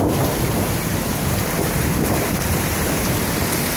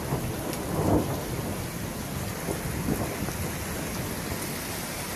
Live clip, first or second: second